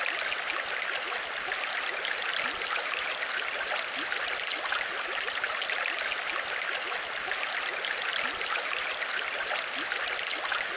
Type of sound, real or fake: real